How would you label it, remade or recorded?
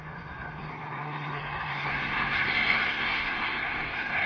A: remade